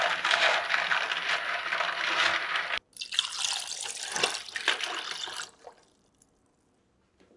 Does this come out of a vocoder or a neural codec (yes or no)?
no